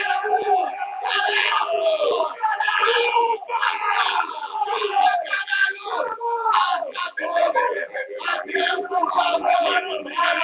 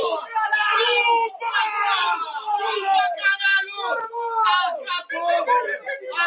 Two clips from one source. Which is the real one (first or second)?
second